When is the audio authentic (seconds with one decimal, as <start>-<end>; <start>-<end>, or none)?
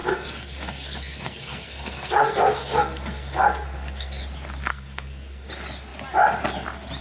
4.2-4.7; 5.5-7.0